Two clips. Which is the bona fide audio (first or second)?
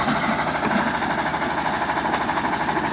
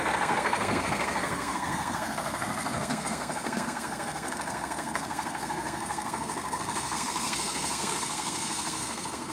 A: first